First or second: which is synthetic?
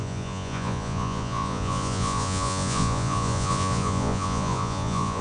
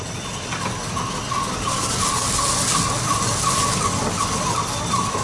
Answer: first